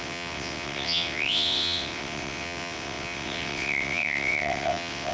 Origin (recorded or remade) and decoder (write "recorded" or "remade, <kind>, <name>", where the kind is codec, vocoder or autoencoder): remade, vocoder, WaveNeXt